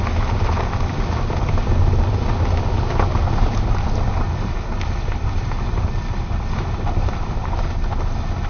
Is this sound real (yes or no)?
yes